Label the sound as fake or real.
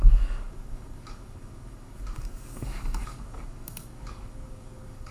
fake